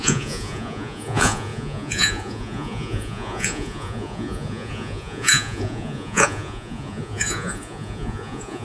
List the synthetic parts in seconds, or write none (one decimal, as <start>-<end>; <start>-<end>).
0.0-8.6